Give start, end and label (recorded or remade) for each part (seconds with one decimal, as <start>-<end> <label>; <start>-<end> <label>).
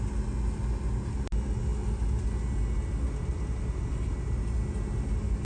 0.0-5.4 recorded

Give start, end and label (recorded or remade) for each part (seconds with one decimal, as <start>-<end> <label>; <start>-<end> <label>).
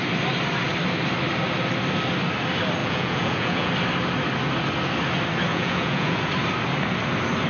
0.0-2.8 recorded; 2.8-3.7 remade; 3.7-5.5 recorded; 5.5-6.3 remade; 6.3-7.5 recorded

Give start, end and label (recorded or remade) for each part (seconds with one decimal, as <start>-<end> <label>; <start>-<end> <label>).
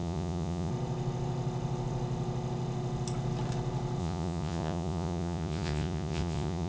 0.0-0.7 remade; 0.7-4.0 recorded; 4.0-6.7 remade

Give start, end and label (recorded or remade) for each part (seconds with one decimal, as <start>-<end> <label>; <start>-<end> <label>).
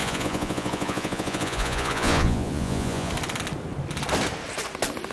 0.0-3.1 remade; 3.1-5.1 recorded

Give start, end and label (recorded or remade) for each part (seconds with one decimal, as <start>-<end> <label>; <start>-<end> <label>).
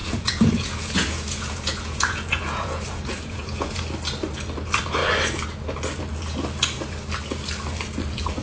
0.0-3.8 remade; 3.8-8.4 recorded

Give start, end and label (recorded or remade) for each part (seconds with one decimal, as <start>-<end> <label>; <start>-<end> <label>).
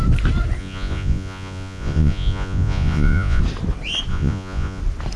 0.0-0.6 recorded; 0.6-3.4 remade; 3.4-4.1 recorded; 4.1-4.8 remade; 4.8-5.2 recorded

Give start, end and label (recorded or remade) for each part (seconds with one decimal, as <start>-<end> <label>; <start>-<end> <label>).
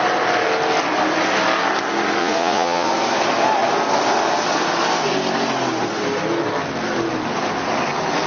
0.0-2.2 recorded; 2.2-2.9 remade; 2.9-8.3 recorded